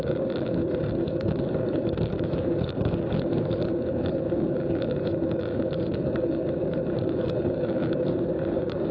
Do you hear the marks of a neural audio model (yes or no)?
yes